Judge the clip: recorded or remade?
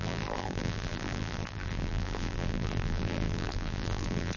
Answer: remade